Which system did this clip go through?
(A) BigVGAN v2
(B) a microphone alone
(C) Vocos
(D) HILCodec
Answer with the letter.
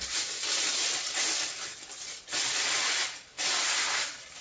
B